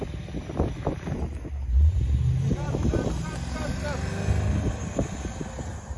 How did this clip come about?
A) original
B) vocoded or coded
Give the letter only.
A